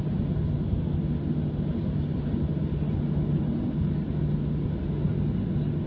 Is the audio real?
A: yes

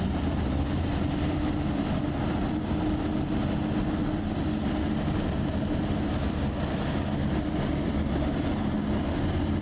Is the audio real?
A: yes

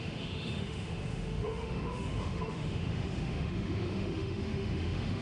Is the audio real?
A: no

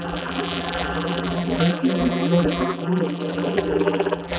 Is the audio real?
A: no